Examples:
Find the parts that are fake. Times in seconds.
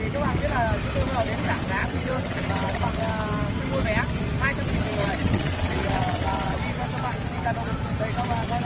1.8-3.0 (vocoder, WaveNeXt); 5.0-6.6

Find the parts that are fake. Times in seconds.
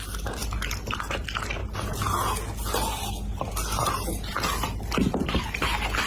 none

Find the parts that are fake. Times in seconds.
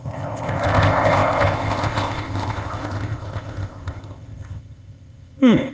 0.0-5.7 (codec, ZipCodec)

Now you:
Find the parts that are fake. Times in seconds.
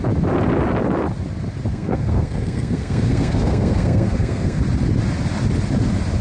1.7-4.6 (codec, SNAC)